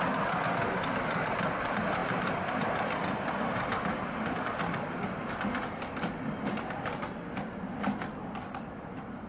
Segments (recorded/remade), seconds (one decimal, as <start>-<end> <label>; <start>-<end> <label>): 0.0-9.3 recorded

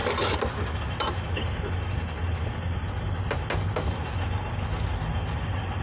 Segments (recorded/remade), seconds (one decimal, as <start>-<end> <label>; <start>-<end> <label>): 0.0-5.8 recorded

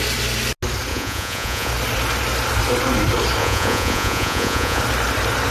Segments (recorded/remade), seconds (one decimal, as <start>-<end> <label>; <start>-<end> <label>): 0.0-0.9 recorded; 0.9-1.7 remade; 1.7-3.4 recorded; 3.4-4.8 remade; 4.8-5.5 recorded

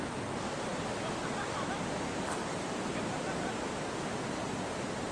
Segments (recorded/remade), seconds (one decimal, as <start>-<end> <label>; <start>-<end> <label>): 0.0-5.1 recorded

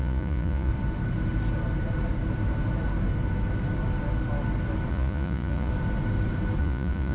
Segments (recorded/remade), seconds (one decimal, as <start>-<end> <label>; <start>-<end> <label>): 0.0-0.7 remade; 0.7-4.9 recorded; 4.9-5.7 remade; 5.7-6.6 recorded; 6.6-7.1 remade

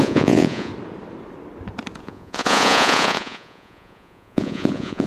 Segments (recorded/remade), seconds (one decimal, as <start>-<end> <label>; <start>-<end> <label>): 0.0-0.7 remade; 0.7-2.0 recorded; 2.0-5.1 remade

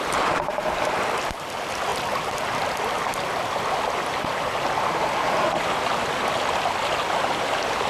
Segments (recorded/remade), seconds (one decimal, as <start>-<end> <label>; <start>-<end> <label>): 0.0-7.9 recorded

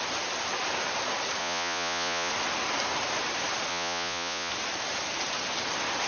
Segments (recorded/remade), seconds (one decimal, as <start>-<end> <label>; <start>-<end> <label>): 0.0-1.4 recorded; 1.4-2.3 remade; 2.3-3.7 recorded; 3.7-4.5 remade; 4.5-6.1 recorded